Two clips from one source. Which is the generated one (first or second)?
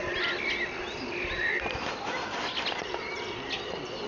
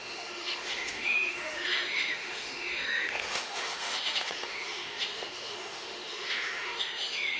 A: second